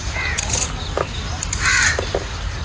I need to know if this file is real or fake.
real